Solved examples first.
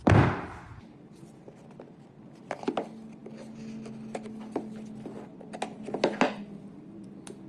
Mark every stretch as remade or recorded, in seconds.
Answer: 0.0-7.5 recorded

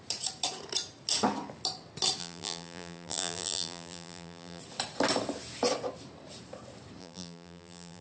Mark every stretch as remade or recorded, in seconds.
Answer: 0.0-2.2 recorded; 2.2-4.6 remade; 4.6-7.0 recorded; 7.0-8.0 remade

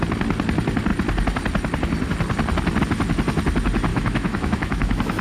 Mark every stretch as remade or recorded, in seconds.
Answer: 0.0-3.9 recorded; 3.9-5.2 remade